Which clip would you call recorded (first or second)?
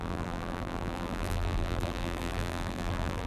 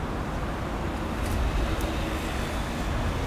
second